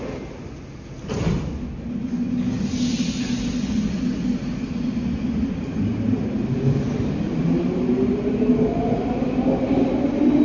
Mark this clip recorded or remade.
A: recorded